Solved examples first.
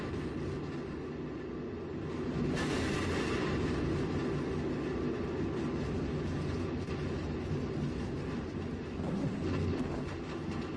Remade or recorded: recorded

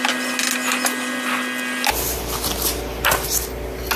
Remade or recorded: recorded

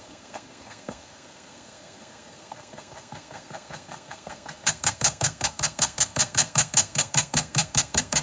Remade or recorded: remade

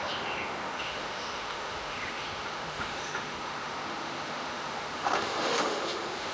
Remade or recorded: remade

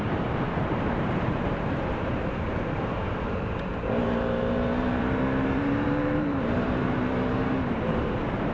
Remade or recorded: remade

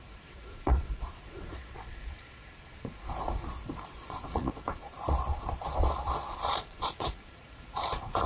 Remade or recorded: remade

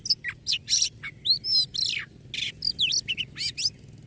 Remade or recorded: recorded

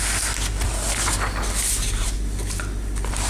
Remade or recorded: recorded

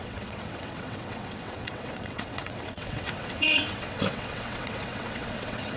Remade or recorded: remade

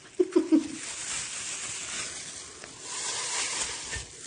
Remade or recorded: recorded